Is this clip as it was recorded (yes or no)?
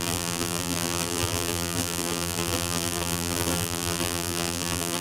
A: no